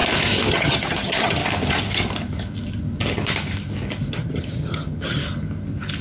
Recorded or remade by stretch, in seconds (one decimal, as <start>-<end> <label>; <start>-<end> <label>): 0.0-0.5 recorded; 0.5-1.4 remade; 1.4-4.1 recorded; 4.1-5.2 remade; 5.2-6.0 recorded